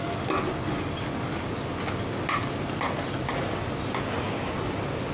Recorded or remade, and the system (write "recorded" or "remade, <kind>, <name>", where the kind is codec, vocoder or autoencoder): recorded